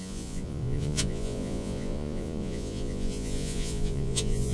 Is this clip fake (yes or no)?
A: yes